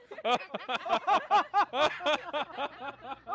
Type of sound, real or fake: real